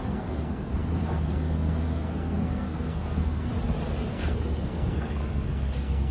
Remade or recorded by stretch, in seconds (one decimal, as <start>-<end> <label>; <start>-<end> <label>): 0.0-3.5 remade; 3.5-4.1 recorded; 4.1-6.1 remade